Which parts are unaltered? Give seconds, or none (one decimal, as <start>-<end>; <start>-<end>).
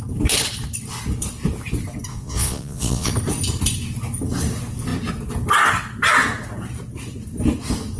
0.0-2.1; 3.1-8.0